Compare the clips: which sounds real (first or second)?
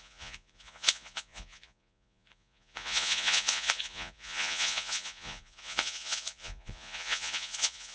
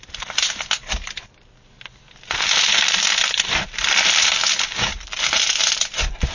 second